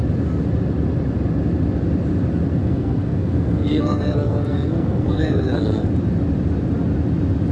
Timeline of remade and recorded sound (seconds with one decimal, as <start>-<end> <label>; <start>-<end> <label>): 0.0-2.6 recorded; 2.6-5.9 remade; 5.9-7.5 recorded